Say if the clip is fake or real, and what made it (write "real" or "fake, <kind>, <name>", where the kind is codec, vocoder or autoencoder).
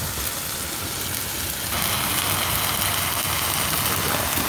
real